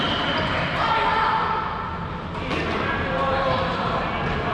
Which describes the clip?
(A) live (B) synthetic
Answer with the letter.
A